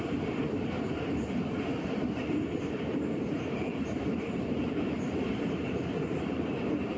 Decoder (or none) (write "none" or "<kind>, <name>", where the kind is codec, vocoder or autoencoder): vocoder, BigVGAN v2